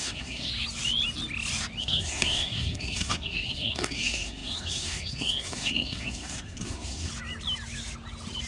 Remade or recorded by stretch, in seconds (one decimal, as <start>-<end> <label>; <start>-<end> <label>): 0.0-0.5 remade; 0.5-1.8 recorded; 1.8-7.1 remade; 7.1-8.5 recorded